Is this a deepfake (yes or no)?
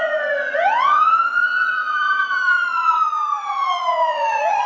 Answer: yes